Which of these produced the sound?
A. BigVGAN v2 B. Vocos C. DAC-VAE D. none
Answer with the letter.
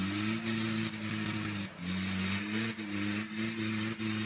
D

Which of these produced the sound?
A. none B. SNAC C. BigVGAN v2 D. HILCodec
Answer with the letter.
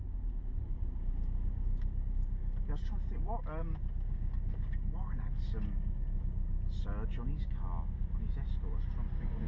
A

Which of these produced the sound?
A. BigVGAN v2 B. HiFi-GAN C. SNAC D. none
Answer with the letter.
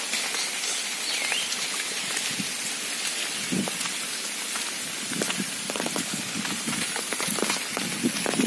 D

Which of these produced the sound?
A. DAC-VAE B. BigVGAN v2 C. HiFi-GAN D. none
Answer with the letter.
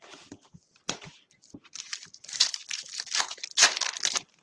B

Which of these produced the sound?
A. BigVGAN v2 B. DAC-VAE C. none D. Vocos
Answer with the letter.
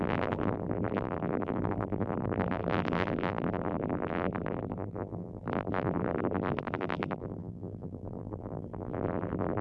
A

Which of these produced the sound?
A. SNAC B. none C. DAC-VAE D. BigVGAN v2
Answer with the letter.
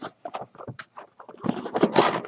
D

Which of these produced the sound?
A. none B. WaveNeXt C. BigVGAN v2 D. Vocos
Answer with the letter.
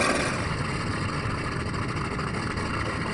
A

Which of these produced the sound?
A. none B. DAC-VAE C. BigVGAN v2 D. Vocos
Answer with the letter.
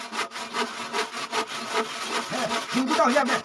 A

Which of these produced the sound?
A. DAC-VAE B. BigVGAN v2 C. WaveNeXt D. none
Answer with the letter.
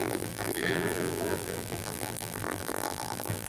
B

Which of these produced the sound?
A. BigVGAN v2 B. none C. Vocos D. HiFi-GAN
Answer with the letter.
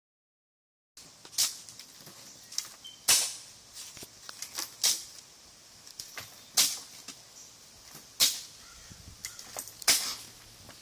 B